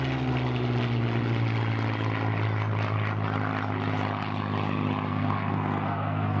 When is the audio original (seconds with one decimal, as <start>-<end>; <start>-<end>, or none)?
0.0-5.1